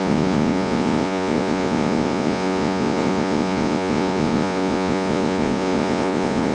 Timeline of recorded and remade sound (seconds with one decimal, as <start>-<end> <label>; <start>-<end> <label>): 0.0-6.5 remade